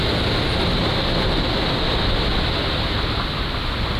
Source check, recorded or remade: recorded